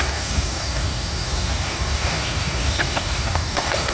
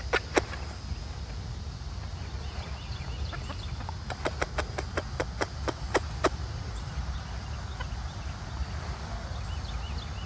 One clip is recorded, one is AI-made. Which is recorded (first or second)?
second